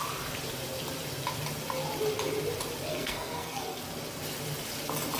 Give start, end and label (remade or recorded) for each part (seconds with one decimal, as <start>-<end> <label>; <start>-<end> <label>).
0.0-2.9 recorded; 2.9-3.8 remade; 3.8-5.2 recorded